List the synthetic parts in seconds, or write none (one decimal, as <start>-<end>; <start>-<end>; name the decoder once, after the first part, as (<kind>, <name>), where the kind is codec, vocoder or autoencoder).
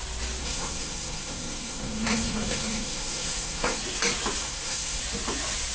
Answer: 0.4-3.8 (codec, SNAC); 4.4-5.0